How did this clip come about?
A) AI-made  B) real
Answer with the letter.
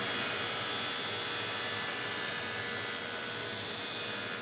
B